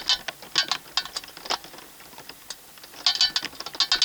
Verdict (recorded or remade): recorded